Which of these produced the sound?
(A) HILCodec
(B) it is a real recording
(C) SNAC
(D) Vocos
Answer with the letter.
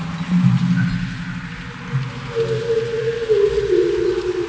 B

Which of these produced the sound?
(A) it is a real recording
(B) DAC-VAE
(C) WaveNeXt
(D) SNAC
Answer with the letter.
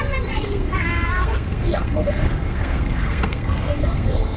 D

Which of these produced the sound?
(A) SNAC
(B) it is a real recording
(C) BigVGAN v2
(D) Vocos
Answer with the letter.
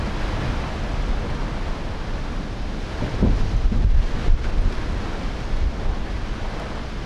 B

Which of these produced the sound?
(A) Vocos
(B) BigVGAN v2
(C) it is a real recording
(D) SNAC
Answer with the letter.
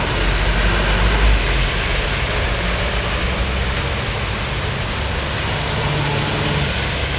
C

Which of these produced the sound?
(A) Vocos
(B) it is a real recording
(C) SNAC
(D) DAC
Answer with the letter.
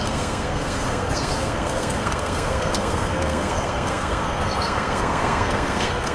C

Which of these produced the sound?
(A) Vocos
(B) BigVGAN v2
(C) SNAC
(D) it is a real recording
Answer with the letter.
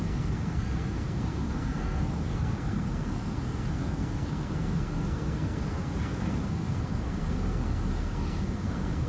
C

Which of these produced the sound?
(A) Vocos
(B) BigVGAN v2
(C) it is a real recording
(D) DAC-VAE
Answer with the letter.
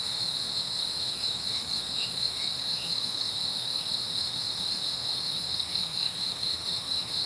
D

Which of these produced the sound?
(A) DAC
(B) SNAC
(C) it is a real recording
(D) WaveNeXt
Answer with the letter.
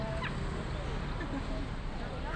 C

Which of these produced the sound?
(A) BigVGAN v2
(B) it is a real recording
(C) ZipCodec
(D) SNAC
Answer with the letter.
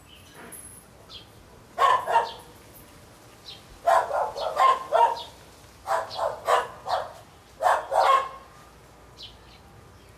B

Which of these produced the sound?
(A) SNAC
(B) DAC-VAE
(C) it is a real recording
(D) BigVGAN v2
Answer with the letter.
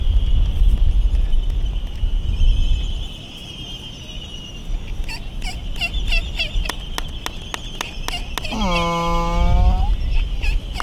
C